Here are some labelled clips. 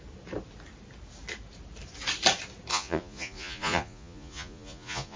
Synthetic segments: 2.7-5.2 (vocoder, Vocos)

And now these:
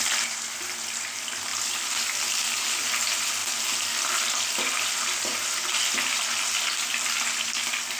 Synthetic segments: none

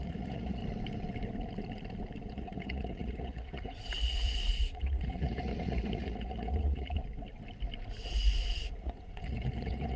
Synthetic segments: 0.0-0.6 (vocoder, Vocos); 2.3-7.0; 8.1-10.0

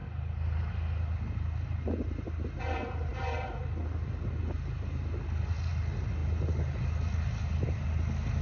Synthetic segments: none

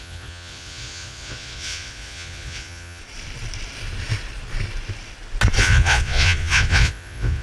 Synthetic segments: 0.0-3.0 (vocoder, Vocos); 5.6-7.4

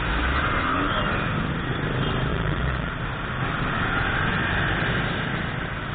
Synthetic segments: 2.3-2.9 (vocoder, Vocos)

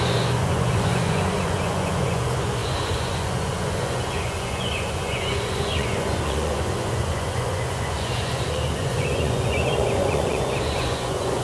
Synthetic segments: 0.0-11.4 (vocoder, Vocos)